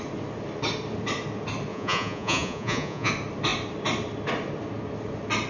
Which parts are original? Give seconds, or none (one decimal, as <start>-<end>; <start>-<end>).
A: 0.0-1.7; 3.1-5.5